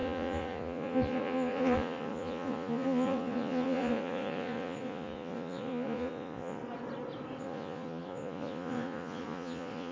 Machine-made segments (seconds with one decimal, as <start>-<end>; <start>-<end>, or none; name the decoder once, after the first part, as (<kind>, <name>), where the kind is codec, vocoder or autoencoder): 0.0-6.6 (vocoder, Vocos); 7.4-9.9